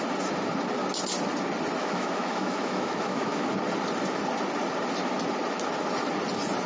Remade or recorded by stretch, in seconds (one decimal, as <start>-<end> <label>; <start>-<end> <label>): 0.0-1.8 recorded; 1.8-3.5 remade; 3.5-6.7 recorded